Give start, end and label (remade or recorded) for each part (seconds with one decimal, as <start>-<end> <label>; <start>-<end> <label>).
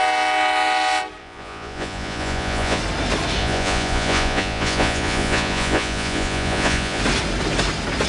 0.0-1.2 recorded; 1.2-2.8 remade; 2.8-3.4 recorded; 3.4-7.0 remade; 7.0-8.1 recorded